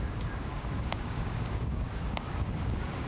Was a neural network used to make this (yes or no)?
yes